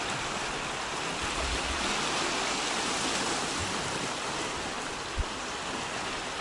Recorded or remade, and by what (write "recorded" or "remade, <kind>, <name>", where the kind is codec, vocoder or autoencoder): recorded